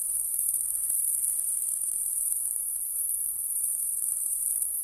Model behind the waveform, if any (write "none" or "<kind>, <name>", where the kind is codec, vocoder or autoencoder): codec, SNAC